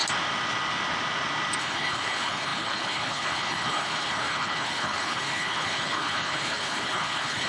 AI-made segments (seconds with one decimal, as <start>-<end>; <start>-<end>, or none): 1.6-7.5